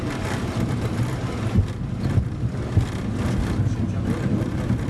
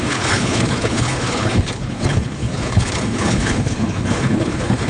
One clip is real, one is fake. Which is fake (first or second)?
second